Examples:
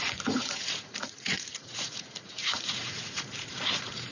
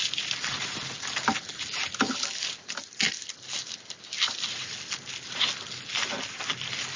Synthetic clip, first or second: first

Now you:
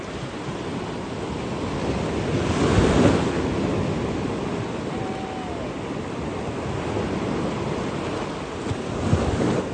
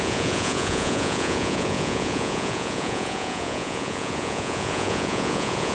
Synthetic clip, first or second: second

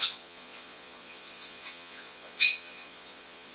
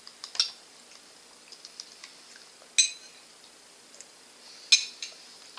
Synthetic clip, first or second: first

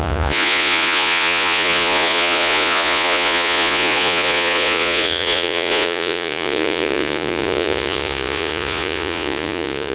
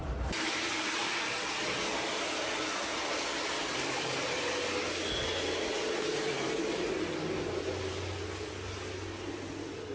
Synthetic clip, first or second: first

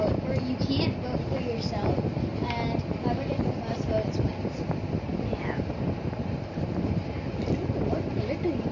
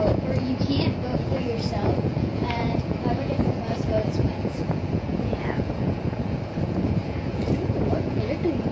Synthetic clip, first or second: second